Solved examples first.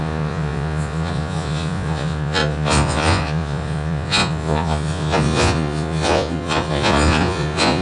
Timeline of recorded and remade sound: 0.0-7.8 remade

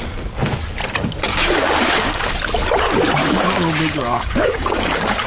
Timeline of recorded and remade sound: 0.0-1.3 recorded; 1.3-2.3 remade; 2.3-3.2 recorded; 3.2-5.3 remade

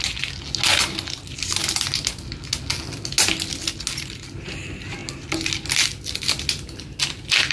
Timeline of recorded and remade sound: 0.0-7.5 recorded

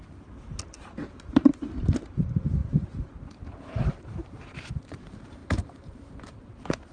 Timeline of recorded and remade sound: 0.0-0.8 recorded; 0.8-6.9 remade

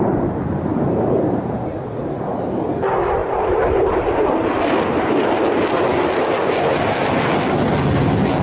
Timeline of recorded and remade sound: 0.0-0.7 recorded; 0.7-1.8 remade; 1.8-3.2 recorded; 3.2-5.4 remade; 5.4-8.4 recorded

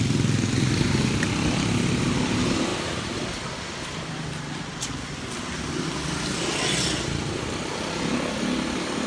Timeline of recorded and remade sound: 0.0-9.1 recorded